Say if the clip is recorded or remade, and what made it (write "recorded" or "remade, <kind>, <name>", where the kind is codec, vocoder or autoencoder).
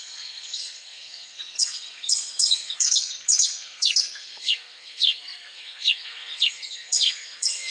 remade, codec, SNAC